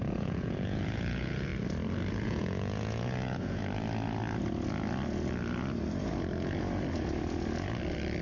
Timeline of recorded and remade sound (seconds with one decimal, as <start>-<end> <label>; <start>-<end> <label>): 0.0-1.5 remade; 1.5-2.1 recorded; 2.1-3.6 remade; 3.6-8.2 recorded